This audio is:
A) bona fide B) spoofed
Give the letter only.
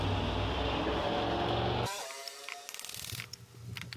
A